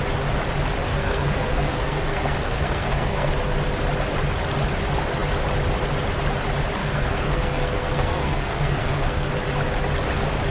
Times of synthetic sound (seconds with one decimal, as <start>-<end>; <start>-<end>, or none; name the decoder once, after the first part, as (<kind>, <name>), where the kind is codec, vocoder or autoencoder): 0.9-3.3 (codec, SNAC); 6.8-9.3